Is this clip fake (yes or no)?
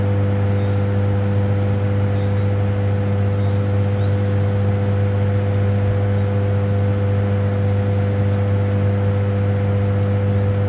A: no